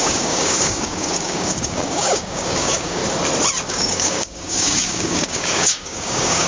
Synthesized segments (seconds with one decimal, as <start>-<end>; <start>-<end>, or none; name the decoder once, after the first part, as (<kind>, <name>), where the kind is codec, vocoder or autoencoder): 0.0-3.0 (codec, DAC); 3.7-6.5